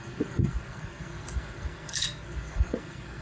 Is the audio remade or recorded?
remade